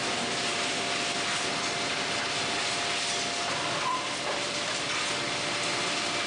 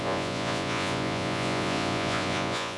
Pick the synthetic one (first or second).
second